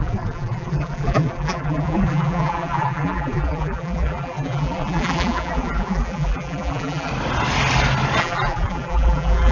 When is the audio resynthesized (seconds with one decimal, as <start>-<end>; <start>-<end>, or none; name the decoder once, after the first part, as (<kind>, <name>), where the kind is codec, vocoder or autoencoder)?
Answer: 0.0-7.1 (vocoder, BigVGAN v2); 8.2-9.5